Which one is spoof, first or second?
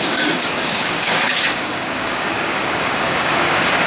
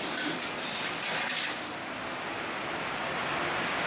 first